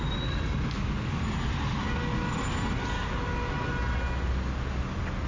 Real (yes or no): yes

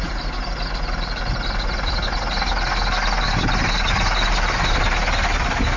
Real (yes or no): yes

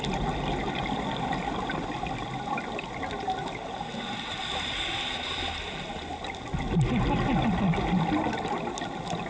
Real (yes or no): yes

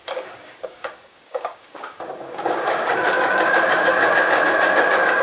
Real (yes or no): no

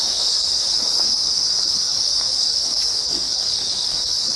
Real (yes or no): no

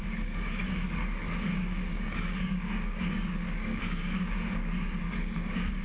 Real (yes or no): no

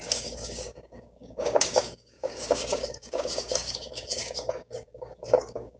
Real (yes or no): no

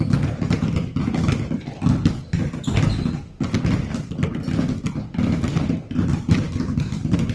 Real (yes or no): yes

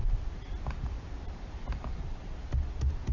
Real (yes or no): yes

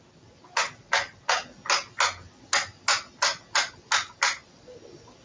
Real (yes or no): yes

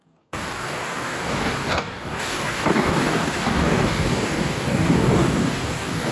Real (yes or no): no